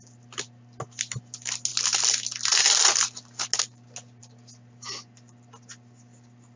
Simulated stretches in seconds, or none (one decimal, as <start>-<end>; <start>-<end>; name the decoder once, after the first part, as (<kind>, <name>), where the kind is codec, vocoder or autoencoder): none